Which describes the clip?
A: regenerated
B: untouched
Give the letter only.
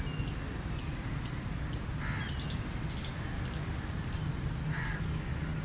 B